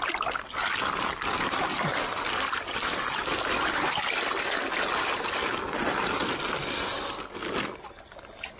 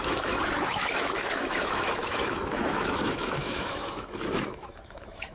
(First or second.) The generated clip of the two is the second